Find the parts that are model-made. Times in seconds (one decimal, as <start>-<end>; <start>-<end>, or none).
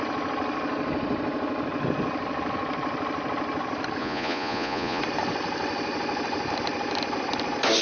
4.0-5.0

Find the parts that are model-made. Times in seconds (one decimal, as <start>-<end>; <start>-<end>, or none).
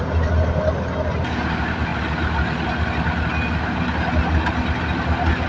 none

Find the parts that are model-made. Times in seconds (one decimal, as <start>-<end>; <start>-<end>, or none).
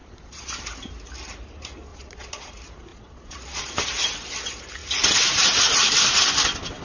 0.0-0.6; 1.9-2.5; 2.9-3.7